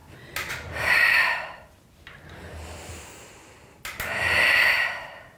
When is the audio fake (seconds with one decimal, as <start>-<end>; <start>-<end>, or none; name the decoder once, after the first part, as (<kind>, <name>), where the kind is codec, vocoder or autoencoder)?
none